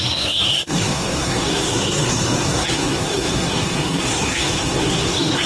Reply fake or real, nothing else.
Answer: fake